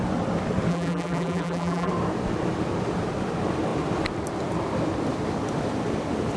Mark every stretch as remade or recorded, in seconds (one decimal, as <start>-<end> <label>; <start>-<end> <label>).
0.0-0.7 recorded; 0.7-1.9 remade; 1.9-6.4 recorded